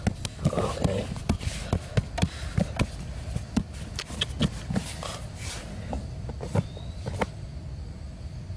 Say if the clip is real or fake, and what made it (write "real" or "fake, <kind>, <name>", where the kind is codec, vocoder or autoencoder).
real